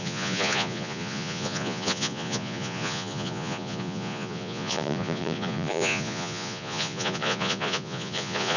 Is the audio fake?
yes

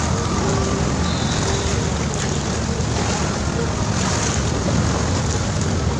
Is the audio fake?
no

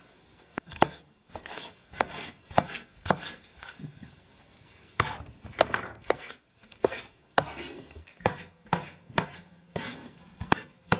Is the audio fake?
yes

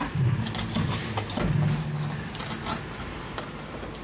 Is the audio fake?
no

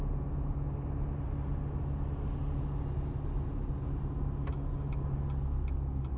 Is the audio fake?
no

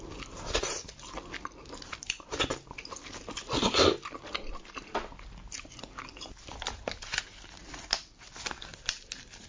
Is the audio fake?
no